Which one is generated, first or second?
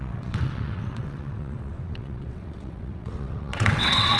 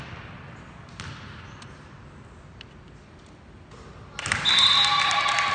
first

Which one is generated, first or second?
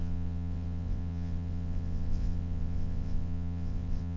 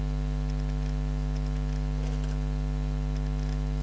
first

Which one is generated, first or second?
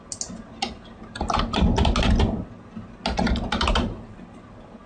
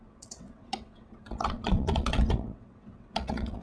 second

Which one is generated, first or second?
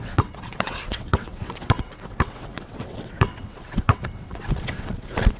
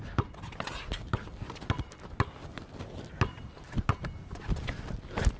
first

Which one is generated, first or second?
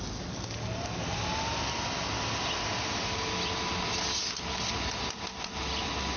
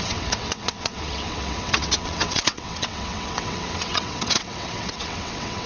second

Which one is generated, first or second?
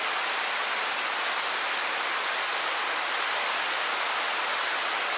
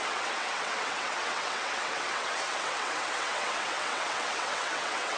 second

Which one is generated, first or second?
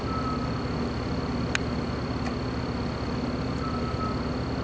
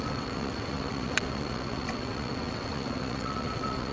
second